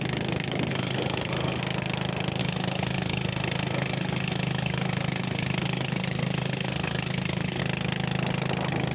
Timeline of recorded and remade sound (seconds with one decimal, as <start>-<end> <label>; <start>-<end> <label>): 0.0-0.7 recorded; 0.7-1.6 remade; 1.6-2.4 recorded; 2.4-7.6 remade; 7.6-8.9 recorded